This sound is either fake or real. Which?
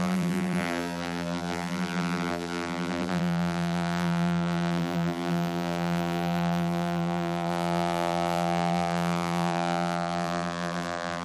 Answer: fake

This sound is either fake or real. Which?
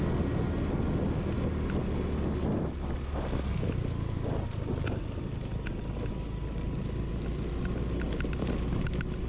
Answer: real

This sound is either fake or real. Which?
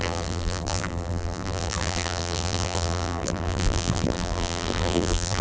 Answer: fake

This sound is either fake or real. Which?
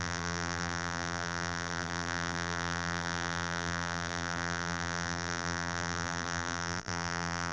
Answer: fake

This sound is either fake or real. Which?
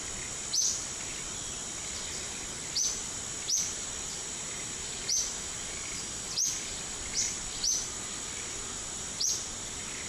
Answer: real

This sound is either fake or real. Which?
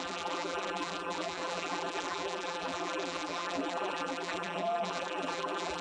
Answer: fake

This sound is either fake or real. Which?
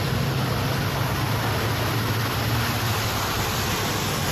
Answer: fake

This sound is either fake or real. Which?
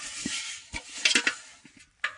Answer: real